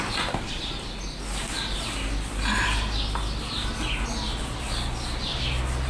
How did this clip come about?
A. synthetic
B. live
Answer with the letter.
B